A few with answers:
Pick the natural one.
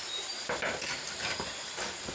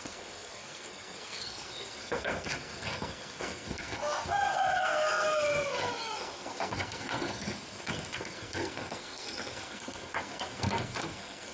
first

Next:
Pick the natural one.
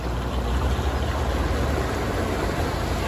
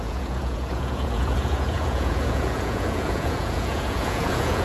first